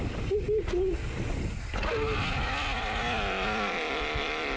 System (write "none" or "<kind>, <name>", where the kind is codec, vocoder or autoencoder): none